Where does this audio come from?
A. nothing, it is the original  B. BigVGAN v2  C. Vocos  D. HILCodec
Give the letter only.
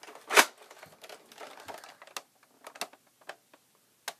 A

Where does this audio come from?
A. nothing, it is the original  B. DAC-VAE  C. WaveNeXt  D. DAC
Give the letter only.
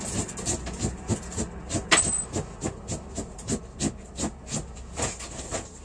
A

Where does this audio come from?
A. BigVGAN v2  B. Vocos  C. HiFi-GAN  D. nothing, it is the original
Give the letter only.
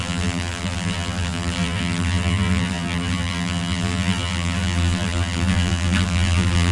A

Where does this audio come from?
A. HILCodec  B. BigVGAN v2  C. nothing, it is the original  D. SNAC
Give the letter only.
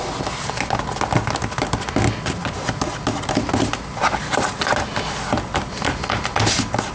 C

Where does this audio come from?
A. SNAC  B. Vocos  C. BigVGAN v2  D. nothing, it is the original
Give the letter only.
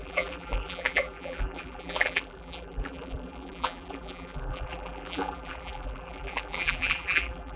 C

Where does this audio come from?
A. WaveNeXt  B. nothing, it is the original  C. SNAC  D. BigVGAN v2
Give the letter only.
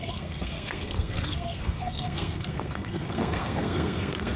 C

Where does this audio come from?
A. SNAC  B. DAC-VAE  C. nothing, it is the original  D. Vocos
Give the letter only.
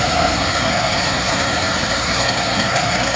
A